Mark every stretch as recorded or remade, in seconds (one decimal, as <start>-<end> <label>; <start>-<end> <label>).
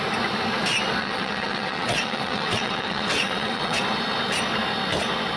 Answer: 0.0-1.0 recorded; 1.0-3.8 remade; 3.8-5.4 recorded